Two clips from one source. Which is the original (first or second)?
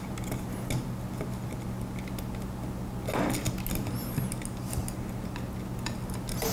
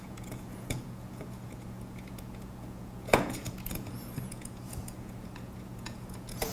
first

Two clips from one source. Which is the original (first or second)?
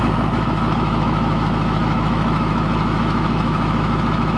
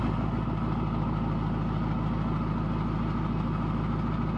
second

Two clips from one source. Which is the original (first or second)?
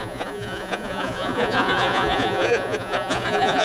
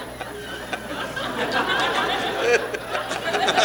second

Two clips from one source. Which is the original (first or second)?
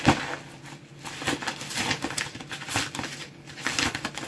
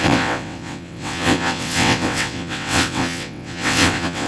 first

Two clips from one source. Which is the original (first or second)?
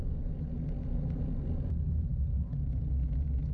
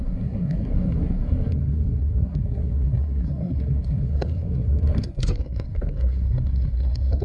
first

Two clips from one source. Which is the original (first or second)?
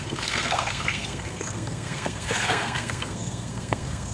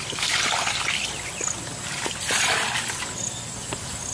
second